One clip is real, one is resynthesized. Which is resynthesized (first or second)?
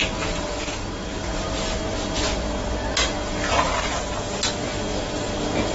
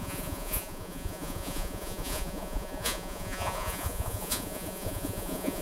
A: second